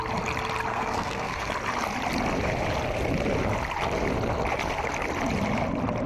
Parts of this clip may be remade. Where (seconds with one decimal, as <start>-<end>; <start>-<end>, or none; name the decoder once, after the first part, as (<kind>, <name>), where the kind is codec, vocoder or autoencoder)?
0.7-1.5 (codec, SNAC)